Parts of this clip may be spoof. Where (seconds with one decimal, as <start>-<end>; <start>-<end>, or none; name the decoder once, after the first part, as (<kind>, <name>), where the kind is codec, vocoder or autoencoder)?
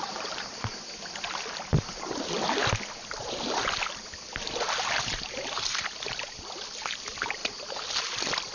none